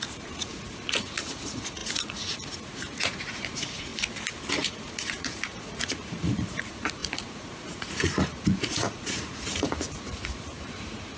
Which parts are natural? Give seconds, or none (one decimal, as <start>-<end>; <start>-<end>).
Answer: 3.9-4.6